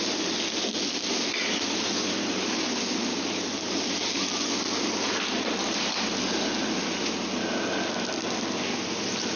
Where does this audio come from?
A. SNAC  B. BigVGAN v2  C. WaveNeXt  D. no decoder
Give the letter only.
D